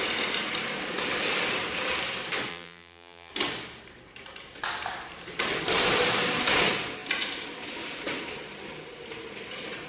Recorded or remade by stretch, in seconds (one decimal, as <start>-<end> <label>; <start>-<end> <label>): 0.0-2.5 recorded; 2.5-3.3 remade; 3.3-9.9 recorded